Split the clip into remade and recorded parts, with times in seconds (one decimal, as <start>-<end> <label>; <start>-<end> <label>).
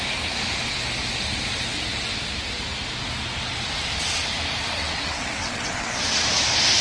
0.0-4.8 recorded; 4.8-6.1 remade; 6.1-6.8 recorded